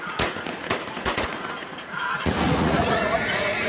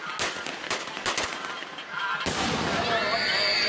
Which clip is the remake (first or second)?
first